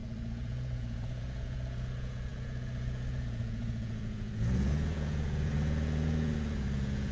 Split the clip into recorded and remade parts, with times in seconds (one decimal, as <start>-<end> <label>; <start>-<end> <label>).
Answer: 0.0-7.1 remade